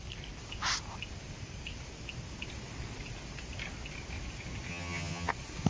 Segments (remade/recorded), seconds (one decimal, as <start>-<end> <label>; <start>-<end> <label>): 0.0-4.7 recorded; 4.7-5.3 remade; 5.3-5.7 recorded